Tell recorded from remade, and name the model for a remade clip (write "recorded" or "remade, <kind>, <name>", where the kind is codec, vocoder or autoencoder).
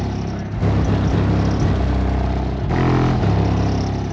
recorded